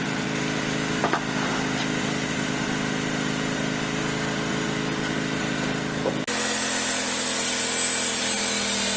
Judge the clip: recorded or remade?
recorded